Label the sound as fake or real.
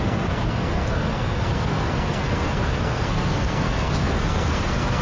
fake